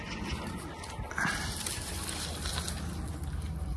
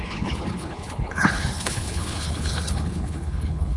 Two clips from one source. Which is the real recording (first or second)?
first